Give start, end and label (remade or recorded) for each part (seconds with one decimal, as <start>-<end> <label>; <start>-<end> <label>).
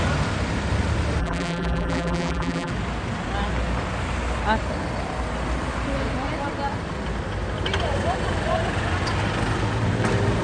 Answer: 0.0-1.2 recorded; 1.2-2.7 remade; 2.7-10.4 recorded